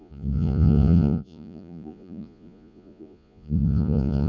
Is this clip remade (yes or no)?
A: yes